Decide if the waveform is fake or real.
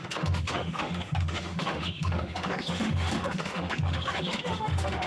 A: fake